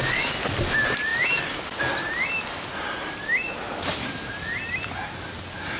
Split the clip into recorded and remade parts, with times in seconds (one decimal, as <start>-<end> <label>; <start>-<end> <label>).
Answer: 0.0-5.8 recorded